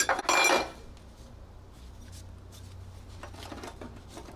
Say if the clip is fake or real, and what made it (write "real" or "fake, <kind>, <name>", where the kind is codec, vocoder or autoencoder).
real